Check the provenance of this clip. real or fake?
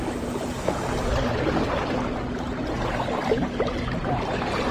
real